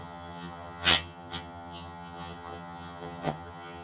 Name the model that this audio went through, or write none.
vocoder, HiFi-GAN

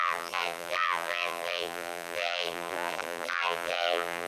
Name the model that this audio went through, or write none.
vocoder, BigVGAN v2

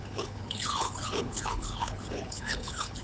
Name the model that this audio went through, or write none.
codec, HILCodec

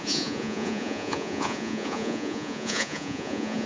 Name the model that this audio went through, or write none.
vocoder, Vocos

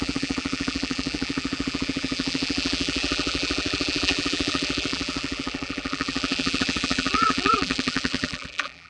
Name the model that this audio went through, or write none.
vocoder, BigVGAN v2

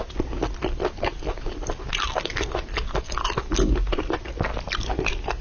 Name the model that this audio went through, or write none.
none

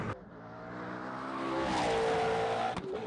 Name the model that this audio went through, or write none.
none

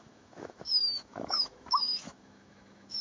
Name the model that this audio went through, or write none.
autoencoder, DAC-VAE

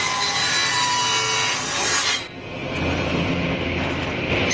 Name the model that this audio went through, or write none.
none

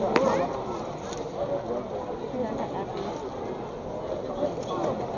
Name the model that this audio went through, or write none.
none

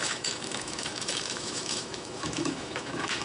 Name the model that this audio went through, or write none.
autoencoder, DAC-VAE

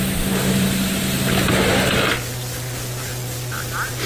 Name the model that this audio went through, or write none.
none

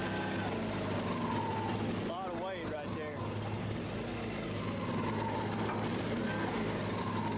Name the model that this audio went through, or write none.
none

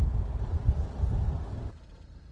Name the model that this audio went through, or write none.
none